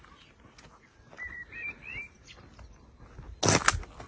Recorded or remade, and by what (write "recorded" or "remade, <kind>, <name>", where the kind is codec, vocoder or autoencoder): recorded